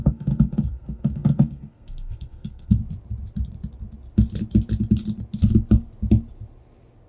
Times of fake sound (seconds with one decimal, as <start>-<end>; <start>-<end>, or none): 0.0-2.8